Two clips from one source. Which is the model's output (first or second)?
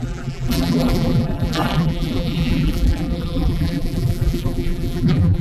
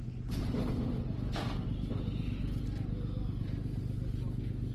first